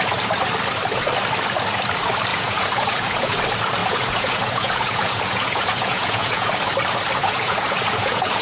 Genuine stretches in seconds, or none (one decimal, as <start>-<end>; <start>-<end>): 0.0-2.3; 3.4-3.8; 6.5-7.2